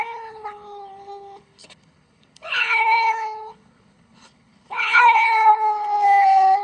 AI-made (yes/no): yes